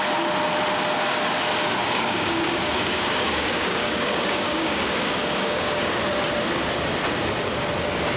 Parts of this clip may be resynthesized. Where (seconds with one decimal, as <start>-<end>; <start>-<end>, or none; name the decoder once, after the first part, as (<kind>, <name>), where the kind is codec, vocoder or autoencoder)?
1.8-6.0 (codec, DAC)